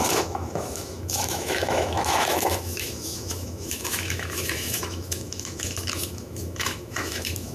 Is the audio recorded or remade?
remade